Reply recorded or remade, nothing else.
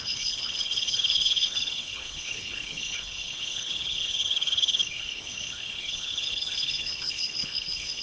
remade